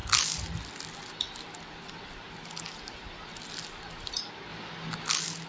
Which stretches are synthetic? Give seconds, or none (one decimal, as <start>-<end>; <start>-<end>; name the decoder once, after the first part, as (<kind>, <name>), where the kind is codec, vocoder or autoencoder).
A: none